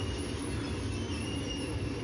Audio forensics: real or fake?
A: real